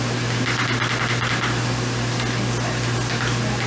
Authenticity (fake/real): real